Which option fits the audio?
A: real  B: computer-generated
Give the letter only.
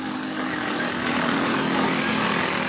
B